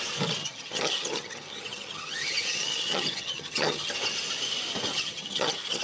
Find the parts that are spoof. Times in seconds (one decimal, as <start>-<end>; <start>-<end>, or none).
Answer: 0.4-3.9; 4.9-5.8